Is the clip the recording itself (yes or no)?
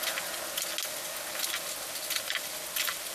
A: yes